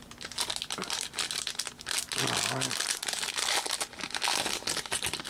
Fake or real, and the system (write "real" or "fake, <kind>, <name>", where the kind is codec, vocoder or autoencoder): real